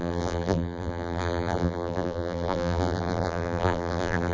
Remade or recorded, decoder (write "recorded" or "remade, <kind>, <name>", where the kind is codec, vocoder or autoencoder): remade, vocoder, BigVGAN v2